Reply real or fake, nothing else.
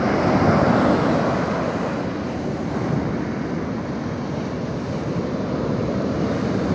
real